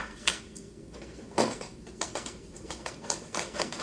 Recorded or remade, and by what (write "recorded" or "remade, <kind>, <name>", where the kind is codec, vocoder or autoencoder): remade, codec, SNAC